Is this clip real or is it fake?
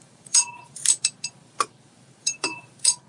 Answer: fake